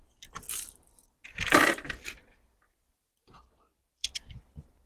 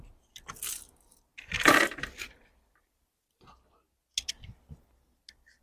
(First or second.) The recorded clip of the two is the second